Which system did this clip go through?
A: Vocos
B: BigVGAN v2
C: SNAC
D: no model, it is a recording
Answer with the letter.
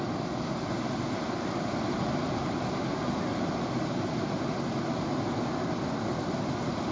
D